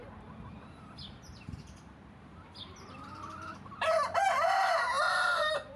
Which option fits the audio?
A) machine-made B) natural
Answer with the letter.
A